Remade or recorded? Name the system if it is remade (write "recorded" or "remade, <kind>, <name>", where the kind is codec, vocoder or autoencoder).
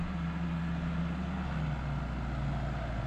recorded